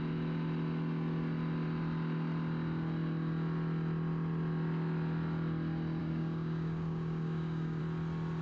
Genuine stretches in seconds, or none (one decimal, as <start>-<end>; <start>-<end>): 0.0-6.0; 7.8-8.4